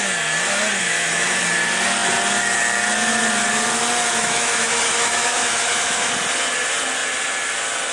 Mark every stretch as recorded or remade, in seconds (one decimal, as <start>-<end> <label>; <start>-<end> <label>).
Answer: 0.0-0.8 recorded; 0.8-1.4 remade; 1.4-4.2 recorded; 4.2-6.1 remade; 6.1-7.9 recorded